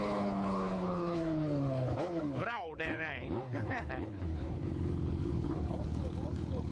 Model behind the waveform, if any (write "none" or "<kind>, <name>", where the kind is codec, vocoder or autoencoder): codec, HILCodec